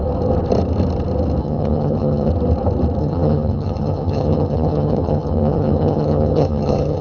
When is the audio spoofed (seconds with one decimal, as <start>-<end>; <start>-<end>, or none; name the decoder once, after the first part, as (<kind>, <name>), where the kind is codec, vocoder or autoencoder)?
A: 1.4-2.3 (vocoder, HiFi-GAN); 3.0-7.0